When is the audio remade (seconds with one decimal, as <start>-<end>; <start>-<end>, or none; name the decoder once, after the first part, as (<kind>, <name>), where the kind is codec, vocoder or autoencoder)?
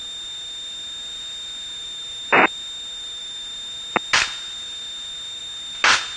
none